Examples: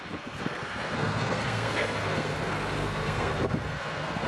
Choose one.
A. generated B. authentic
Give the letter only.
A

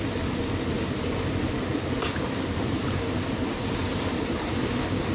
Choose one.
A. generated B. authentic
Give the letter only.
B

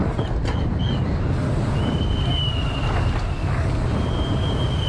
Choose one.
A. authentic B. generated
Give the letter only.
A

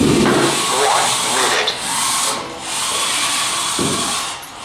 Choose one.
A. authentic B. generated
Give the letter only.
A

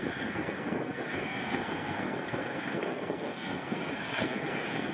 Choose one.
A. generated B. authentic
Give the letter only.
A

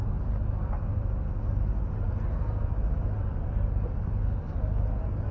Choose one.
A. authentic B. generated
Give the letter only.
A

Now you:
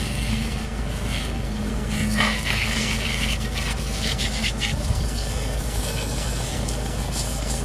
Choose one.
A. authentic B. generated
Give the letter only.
B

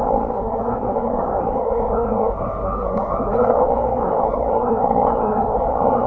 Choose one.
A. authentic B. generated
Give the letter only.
B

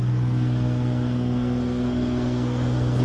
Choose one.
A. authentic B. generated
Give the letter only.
B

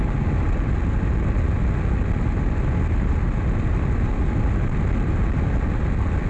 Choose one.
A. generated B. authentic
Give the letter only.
B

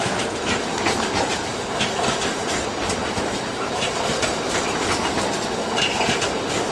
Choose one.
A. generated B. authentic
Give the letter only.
B